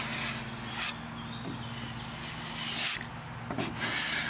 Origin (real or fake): real